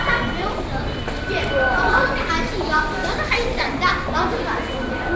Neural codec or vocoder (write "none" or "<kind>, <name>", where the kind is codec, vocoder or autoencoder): none